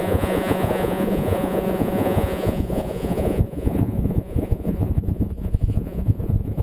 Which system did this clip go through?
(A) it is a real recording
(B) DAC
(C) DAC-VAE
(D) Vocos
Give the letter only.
D